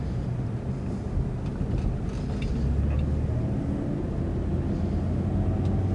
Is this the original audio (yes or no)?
yes